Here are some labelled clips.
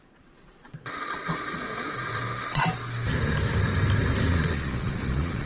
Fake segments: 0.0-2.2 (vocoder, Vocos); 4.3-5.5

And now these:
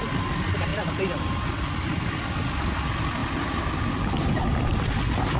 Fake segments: none

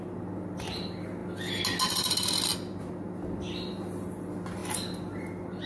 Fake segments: none

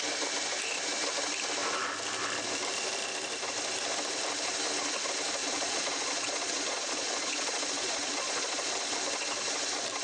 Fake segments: 5.4-8.7 (vocoder, Vocos)